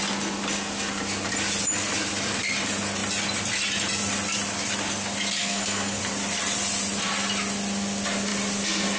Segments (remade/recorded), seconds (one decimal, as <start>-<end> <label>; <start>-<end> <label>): 0.0-5.4 recorded; 5.4-6.0 remade; 6.0-9.0 recorded